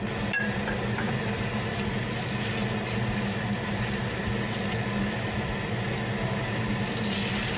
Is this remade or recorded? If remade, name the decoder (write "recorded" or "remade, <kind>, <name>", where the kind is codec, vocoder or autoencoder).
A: recorded